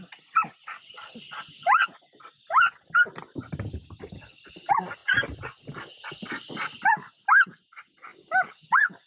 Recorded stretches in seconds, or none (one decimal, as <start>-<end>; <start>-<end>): 0.0-9.1